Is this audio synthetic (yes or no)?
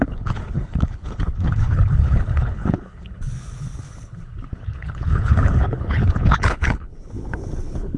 yes